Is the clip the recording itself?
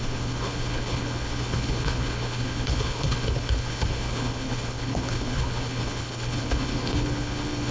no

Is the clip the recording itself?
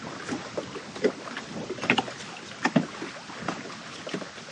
yes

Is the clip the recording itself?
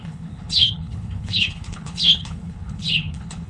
no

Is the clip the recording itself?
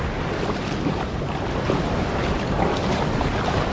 yes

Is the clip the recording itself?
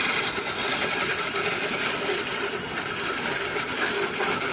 yes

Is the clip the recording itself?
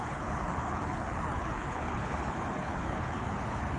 no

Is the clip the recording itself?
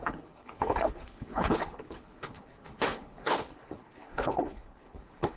no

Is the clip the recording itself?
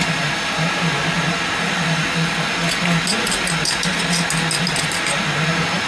yes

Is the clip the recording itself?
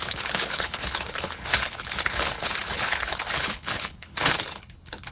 no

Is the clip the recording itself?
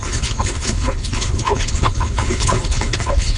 no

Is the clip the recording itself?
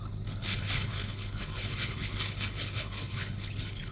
no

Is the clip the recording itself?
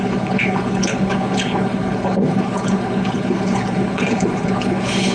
no